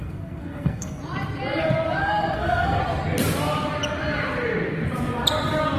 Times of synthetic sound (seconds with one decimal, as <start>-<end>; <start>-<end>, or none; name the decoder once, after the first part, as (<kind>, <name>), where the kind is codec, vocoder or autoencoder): 0.0-1.0 (codec, SNAC); 2.0-2.8